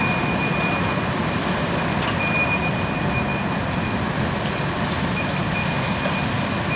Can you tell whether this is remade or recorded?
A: recorded